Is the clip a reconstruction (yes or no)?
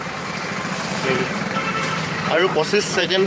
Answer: yes